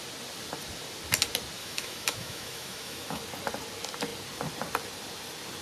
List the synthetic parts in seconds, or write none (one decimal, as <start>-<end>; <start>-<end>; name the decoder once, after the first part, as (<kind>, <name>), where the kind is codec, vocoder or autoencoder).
1.6-3.2 (autoencoder, DAC-VAE)